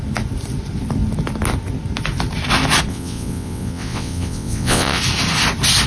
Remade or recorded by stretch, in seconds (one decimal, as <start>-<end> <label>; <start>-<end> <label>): 0.0-2.9 recorded; 2.9-5.0 remade; 5.0-5.9 recorded